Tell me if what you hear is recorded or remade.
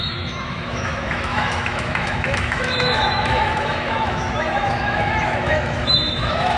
remade